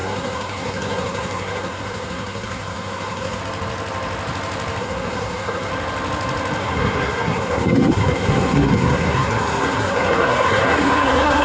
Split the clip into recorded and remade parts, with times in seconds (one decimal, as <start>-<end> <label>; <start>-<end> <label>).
0.0-3.4 remade; 3.4-4.8 recorded; 4.8-5.7 remade; 5.7-6.6 recorded; 6.6-11.4 remade